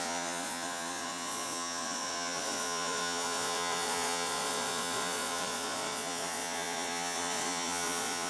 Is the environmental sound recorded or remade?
remade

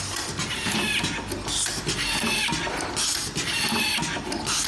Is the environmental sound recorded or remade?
recorded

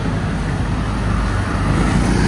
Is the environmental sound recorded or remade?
recorded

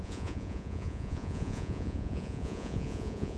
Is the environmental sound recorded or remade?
remade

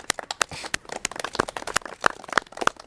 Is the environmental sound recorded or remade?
recorded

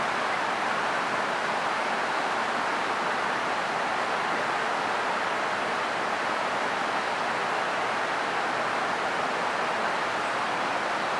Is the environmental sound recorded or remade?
recorded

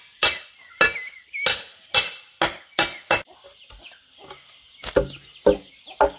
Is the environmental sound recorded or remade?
recorded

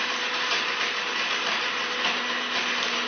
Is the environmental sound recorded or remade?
recorded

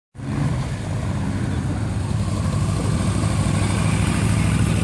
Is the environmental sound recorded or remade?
recorded